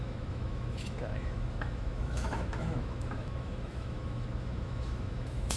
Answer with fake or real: fake